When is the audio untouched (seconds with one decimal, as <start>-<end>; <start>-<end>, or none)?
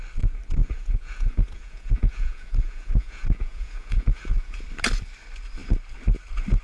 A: 0.0-0.6; 4.6-6.6